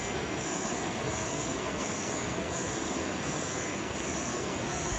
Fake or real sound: fake